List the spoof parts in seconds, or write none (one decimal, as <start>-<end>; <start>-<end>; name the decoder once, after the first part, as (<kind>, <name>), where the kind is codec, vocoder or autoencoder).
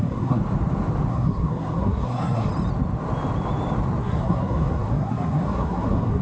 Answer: 0.0-0.4 (codec, SNAC); 1.1-2.5; 4.0-6.2